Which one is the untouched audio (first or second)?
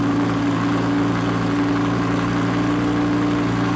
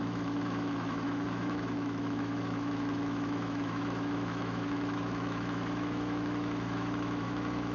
first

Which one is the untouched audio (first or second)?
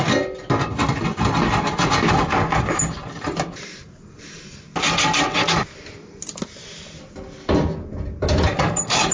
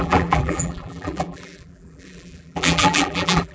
first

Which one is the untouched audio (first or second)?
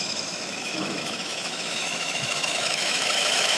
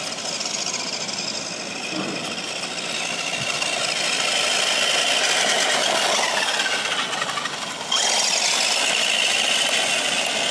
second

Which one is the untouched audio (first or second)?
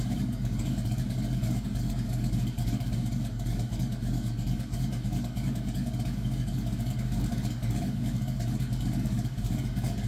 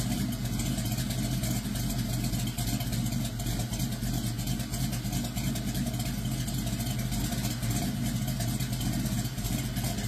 second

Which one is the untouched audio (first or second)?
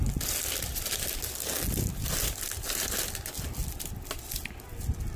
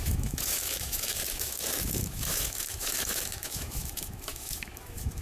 first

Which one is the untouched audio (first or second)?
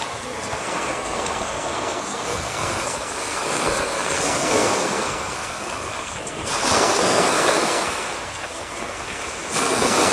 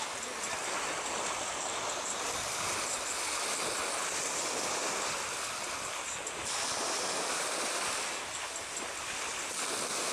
second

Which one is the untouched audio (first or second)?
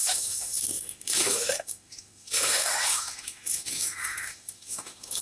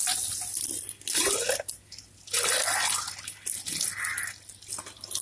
second